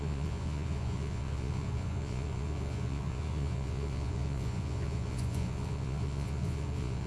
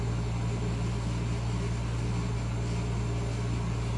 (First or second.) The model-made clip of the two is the first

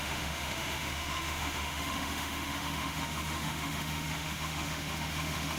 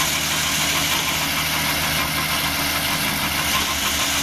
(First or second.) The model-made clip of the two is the first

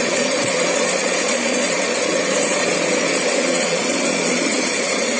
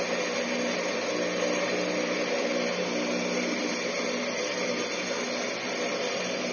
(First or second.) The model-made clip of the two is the first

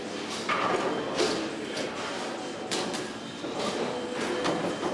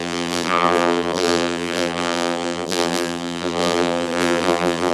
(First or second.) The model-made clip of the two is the second